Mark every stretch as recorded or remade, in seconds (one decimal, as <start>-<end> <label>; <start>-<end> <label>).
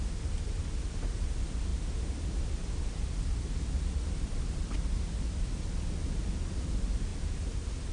0.0-7.9 recorded